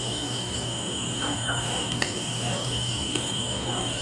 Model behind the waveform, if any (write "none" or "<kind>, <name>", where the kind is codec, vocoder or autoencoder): codec, DAC